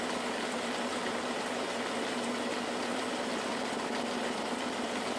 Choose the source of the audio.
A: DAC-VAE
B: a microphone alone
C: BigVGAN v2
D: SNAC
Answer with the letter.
B